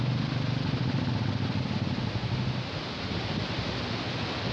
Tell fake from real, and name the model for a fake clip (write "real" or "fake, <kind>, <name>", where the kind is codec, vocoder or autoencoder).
real